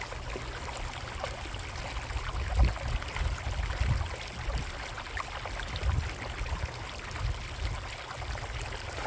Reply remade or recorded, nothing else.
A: recorded